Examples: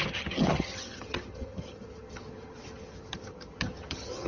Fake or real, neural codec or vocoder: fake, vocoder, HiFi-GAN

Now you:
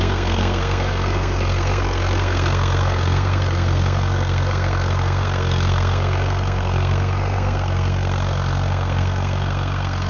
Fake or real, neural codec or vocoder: fake, codec, SNAC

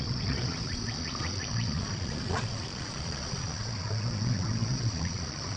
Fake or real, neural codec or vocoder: fake, vocoder, Vocos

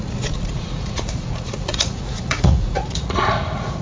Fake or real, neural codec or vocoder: fake, vocoder, Vocos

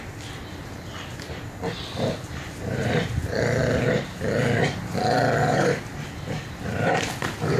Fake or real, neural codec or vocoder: fake, vocoder, BigVGAN v2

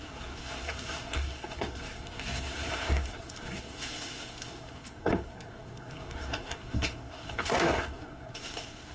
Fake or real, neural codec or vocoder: fake, codec, SNAC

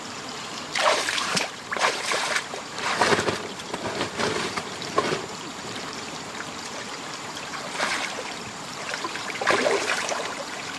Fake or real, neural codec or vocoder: fake, vocoder, BigVGAN v2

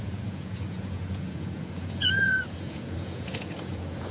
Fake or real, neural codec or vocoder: fake, vocoder, Vocos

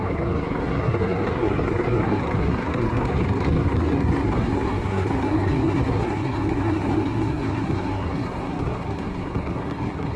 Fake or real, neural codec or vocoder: fake, codec, SNAC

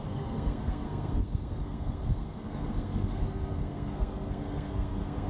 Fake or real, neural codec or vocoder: fake, codec, SNAC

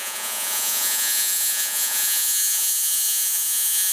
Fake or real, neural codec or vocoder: fake, vocoder, Vocos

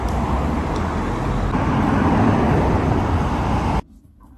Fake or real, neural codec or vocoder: real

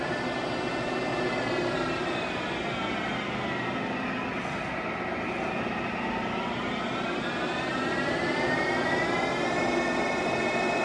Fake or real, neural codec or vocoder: real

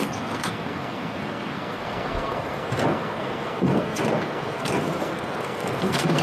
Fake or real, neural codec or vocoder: fake, codec, SNAC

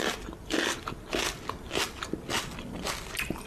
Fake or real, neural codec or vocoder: real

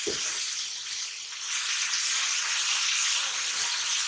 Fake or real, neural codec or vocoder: real